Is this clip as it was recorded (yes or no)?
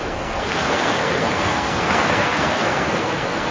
no